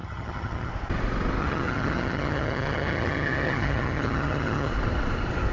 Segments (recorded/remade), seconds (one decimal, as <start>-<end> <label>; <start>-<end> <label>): 0.0-0.7 remade; 0.7-1.4 recorded; 1.4-4.7 remade; 4.7-5.5 recorded